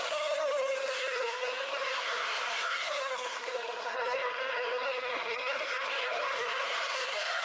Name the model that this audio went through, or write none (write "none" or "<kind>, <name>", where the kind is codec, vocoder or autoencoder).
codec, SNAC